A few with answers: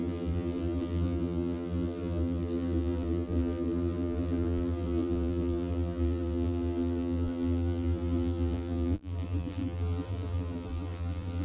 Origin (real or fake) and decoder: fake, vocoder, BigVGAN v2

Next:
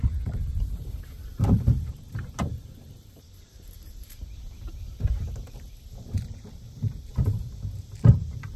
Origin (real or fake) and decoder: fake, vocoder, BigVGAN v2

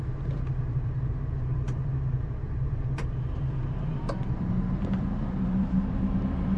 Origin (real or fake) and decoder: fake, vocoder, BigVGAN v2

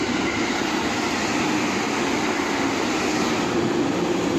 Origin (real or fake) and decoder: real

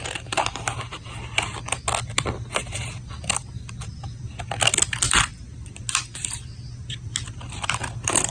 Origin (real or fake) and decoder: real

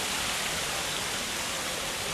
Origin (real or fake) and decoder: real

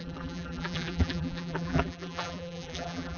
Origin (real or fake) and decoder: fake, vocoder, BigVGAN v2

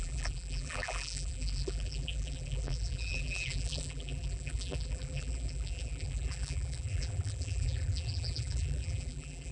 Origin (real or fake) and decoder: fake, vocoder, BigVGAN v2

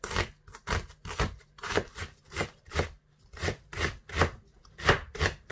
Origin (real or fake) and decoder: real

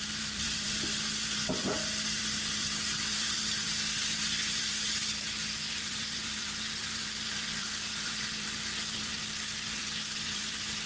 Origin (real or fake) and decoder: fake, vocoder, BigVGAN v2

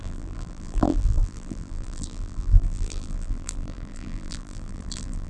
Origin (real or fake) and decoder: fake, vocoder, BigVGAN v2